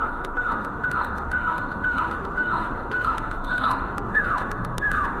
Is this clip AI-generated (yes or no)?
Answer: yes